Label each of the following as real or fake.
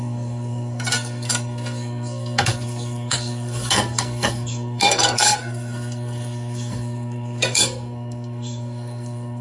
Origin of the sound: fake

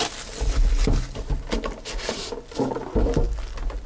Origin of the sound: real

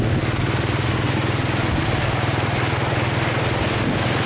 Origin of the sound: real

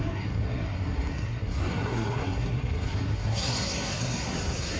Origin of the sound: fake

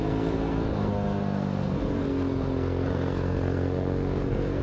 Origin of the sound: fake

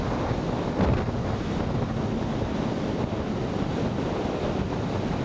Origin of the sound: real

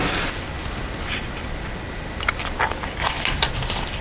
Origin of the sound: real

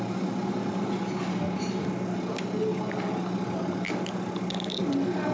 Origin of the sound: real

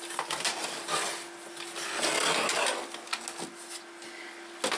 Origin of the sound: real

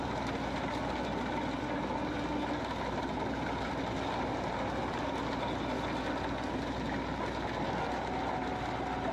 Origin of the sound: real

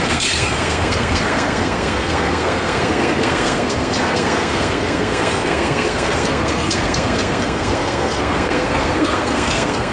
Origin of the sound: fake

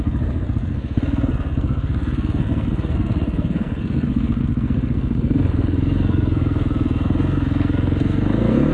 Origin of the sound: fake